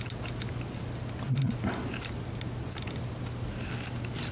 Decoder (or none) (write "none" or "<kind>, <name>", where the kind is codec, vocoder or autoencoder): none